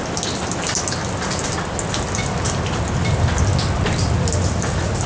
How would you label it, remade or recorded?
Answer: recorded